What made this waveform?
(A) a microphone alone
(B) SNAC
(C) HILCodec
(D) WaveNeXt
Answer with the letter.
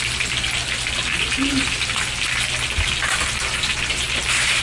A